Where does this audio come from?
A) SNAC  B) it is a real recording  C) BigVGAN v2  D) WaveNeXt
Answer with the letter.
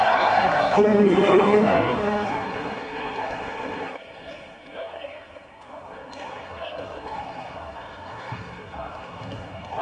A